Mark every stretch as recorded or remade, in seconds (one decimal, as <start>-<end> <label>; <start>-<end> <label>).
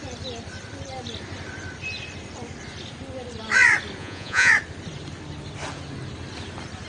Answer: 0.0-4.0 recorded; 4.0-4.5 remade; 4.5-6.9 recorded